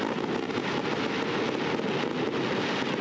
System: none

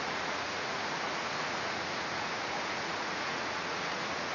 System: vocoder, Vocos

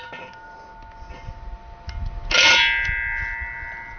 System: none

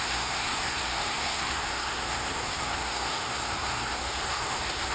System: codec, SNAC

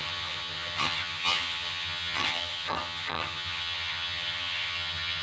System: vocoder, HiFi-GAN